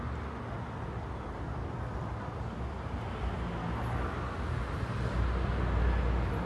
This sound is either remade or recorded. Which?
recorded